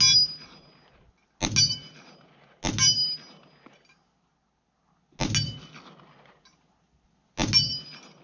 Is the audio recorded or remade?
recorded